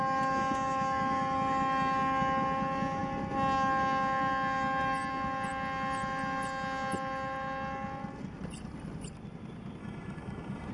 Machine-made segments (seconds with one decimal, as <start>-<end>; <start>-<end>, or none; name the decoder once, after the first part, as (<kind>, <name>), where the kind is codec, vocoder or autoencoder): 9.8-10.7 (autoencoder, DAC-VAE)